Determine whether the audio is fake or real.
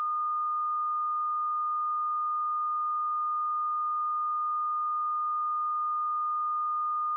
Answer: real